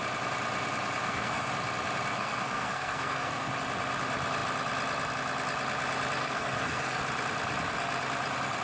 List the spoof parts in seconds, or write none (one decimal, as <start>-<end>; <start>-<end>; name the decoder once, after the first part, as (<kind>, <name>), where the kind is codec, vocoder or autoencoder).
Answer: 1.0-1.5 (codec, SNAC); 2.1-3.5; 6.2-7.0